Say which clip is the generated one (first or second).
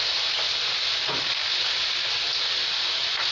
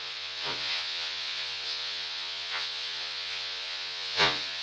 second